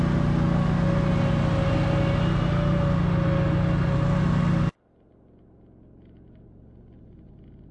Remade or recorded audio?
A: recorded